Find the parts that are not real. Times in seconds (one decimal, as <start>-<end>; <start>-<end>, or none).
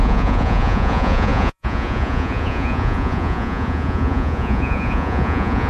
0.0-5.7